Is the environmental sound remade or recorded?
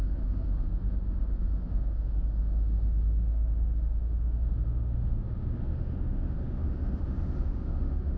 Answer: remade